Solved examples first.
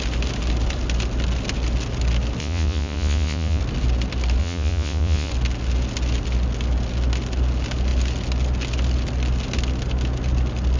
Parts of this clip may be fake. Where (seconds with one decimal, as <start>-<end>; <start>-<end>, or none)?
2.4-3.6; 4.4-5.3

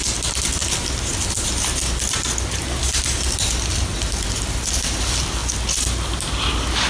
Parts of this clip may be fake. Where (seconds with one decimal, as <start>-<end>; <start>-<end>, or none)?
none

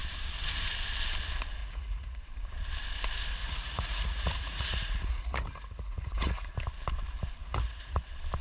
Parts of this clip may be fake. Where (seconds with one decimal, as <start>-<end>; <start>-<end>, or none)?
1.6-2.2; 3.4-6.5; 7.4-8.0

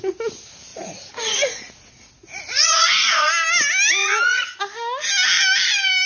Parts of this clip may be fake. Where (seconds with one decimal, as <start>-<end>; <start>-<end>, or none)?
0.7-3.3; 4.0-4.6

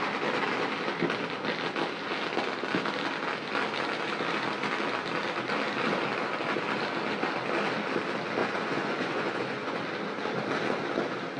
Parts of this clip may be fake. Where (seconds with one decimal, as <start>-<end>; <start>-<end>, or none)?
8.4-9.8

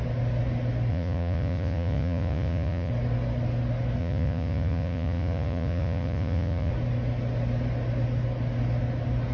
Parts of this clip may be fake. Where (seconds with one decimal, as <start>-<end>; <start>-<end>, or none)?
0.9-2.9; 4.0-6.7